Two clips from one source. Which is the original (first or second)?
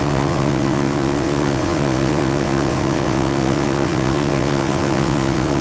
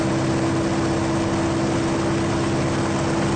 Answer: second